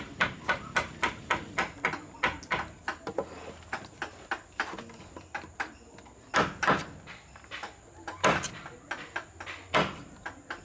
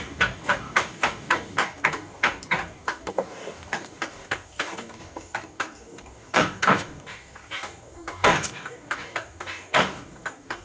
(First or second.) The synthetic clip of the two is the second